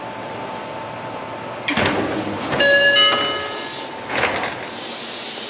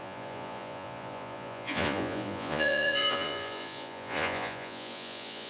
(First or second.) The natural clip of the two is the first